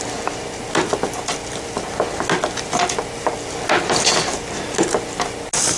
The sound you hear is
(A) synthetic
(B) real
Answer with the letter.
B